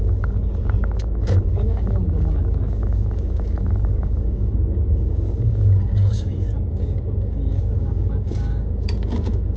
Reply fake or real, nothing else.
fake